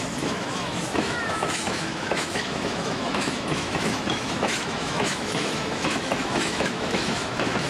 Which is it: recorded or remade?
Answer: remade